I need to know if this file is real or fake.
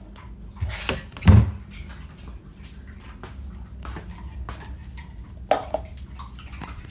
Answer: real